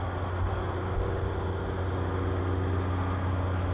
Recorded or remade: recorded